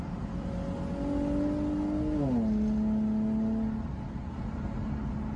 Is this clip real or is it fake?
real